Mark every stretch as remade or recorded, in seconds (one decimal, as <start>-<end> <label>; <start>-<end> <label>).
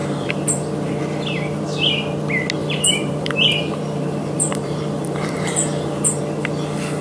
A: 0.0-1.0 remade; 1.0-2.6 recorded; 2.6-6.2 remade; 6.2-7.0 recorded